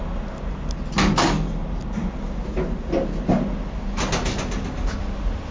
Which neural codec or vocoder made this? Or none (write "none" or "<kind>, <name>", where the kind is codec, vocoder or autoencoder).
none